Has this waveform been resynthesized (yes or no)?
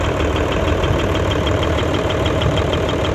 yes